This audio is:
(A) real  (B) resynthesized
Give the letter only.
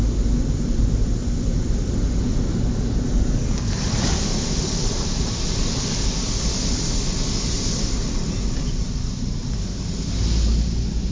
A